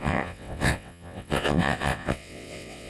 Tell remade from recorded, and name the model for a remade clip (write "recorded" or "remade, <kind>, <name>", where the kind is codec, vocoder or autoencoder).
remade, vocoder, WaveNeXt